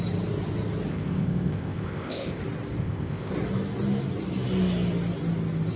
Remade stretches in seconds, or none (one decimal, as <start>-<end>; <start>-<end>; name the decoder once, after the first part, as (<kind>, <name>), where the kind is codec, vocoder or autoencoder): 0.9-2.4 (codec, ZipCodec); 2.8-3.3